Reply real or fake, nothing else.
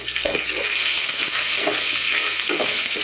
fake